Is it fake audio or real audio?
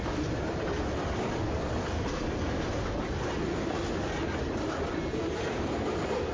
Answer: real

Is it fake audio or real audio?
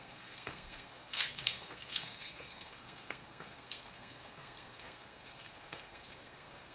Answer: fake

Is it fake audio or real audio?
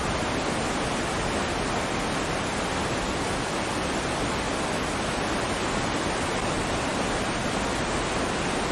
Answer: real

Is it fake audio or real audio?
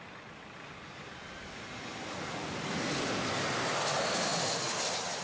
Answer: real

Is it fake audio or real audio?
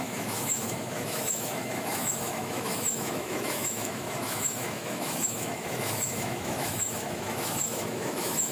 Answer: fake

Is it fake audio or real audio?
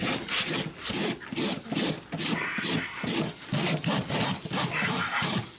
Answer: real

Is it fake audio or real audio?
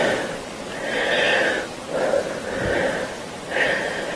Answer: fake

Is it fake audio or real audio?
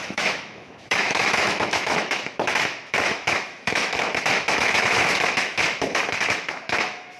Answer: fake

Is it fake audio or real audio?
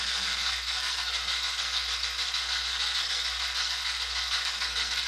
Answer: fake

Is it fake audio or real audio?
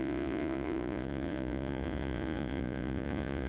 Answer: fake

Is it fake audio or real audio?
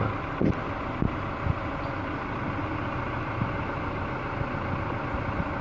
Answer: real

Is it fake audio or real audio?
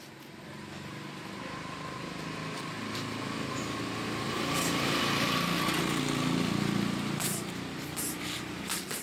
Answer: real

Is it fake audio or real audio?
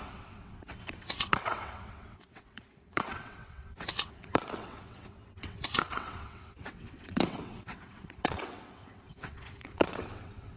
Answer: fake